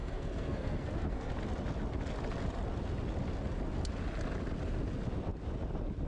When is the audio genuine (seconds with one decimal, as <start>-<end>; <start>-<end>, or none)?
1.3-6.1

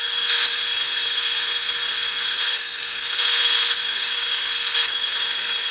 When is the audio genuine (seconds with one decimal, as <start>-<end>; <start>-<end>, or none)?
none

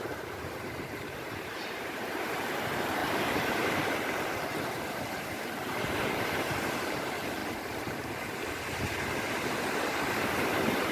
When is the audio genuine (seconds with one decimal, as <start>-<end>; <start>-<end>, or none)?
7.4-10.3

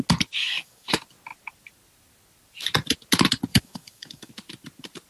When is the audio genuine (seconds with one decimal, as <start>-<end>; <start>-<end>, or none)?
0.0-0.4; 0.9-3.5; 4.3-5.1

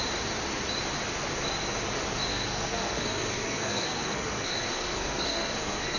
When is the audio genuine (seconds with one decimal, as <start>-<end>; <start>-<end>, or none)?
0.0-2.3

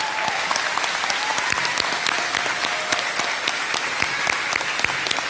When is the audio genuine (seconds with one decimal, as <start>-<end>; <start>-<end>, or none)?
0.0-5.3